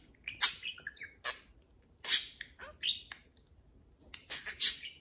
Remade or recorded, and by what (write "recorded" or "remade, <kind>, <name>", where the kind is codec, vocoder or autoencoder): recorded